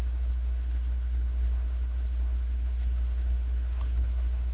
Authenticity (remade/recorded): remade